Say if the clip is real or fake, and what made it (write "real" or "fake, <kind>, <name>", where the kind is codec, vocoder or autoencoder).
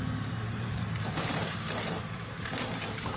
fake, vocoder, BigVGAN v2